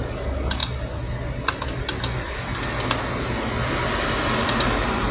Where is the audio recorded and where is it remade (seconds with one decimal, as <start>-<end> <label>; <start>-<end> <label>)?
0.0-5.1 recorded